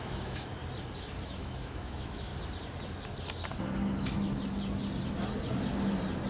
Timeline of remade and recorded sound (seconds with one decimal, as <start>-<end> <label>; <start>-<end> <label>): 0.0-0.6 remade; 0.6-1.2 recorded; 1.2-2.3 remade; 2.3-6.3 recorded